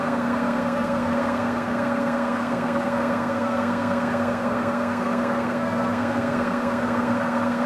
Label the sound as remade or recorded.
remade